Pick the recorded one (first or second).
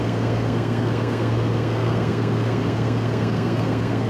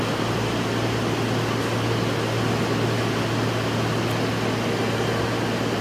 second